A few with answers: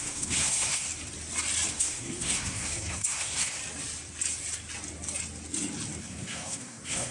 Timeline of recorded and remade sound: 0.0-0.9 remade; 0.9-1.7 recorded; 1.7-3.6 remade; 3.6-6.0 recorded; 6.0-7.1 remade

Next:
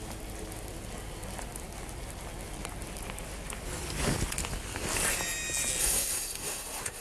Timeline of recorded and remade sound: 0.0-5.8 recorded; 5.8-7.0 remade

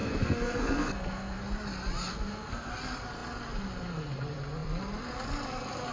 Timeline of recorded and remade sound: 0.0-1.4 remade; 1.4-2.1 recorded; 2.1-2.7 remade; 2.7-5.9 recorded

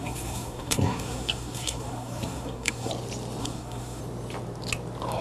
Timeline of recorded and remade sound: 0.0-2.9 remade; 2.9-3.4 recorded; 3.4-4.0 remade; 4.0-5.2 recorded

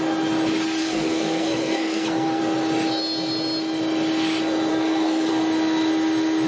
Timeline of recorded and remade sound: 0.0-0.8 recorded; 0.8-2.4 remade; 2.4-4.7 recorded; 4.7-5.3 remade; 5.3-6.5 recorded

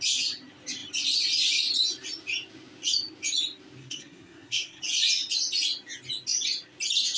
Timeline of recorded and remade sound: 0.0-3.8 recorded; 3.8-4.8 remade; 4.8-7.2 recorded